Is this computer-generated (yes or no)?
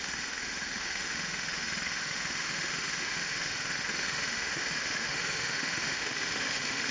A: yes